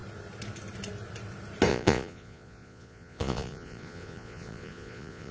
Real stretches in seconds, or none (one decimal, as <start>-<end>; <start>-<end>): 0.0-1.7